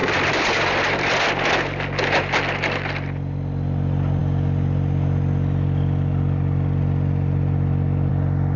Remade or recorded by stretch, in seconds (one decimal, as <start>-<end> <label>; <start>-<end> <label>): 0.0-1.5 remade; 1.5-8.6 recorded